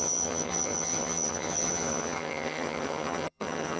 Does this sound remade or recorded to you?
remade